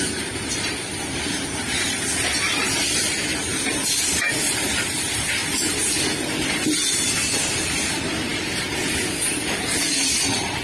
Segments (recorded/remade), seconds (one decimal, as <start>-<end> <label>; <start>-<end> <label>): 0.0-10.6 recorded